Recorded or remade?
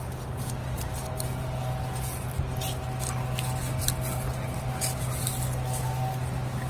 recorded